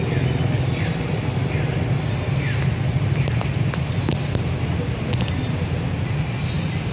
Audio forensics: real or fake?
real